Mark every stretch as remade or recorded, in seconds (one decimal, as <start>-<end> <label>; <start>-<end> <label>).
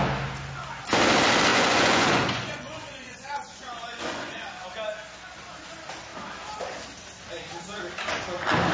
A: 0.0-1.5 recorded; 1.5-4.5 remade; 4.5-8.7 recorded